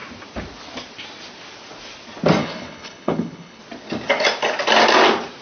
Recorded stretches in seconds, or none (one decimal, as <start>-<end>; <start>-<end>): 0.0-2.4; 3.6-5.4